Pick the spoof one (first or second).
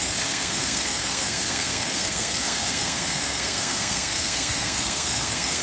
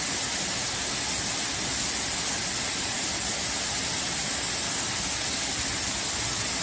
first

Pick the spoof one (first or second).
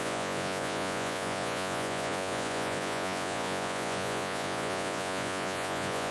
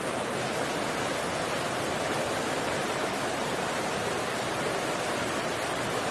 first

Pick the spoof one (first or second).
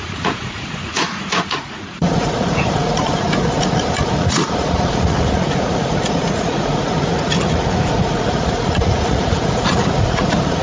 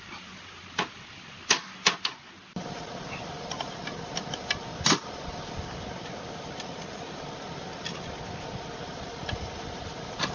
first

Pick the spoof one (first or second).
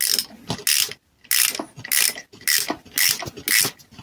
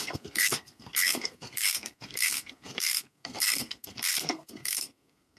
second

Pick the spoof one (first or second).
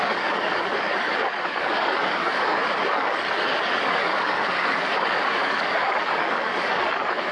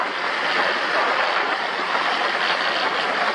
first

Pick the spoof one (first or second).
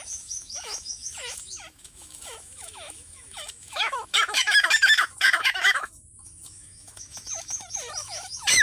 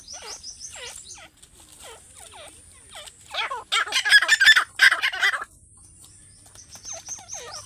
first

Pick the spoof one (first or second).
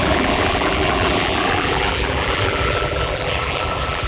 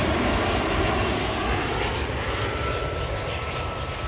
first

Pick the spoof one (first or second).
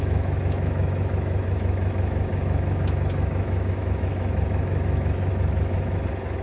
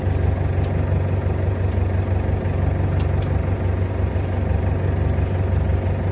first